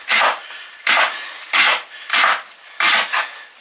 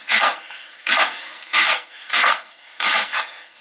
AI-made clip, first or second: second